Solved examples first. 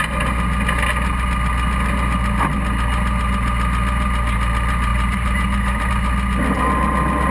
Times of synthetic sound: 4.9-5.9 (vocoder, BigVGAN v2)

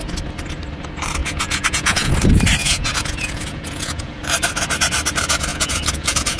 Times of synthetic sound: 1.2-2.1 (vocoder, Vocos); 2.6-4.2; 5.5-6.4

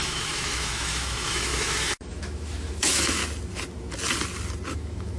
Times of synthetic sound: 0.0-3.2 (autoencoder, DAC-VAE); 4.7-5.2

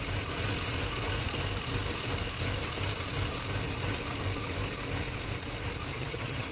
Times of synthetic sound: 5.9-6.5 (vocoder, HiFi-GAN)

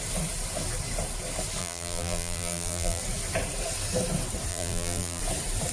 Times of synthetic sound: 1.6-3.0 (vocoder, BigVGAN v2); 4.5-5.2

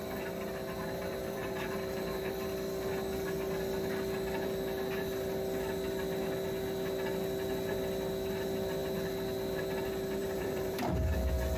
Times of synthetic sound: 1.0-2.3 (vocoder, BigVGAN v2); 10.2-10.8

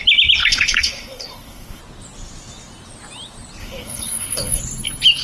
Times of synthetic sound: 0.4-1.8 (codec, HILCodec); 3.6-4.6

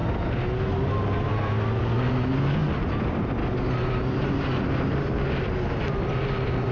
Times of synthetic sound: none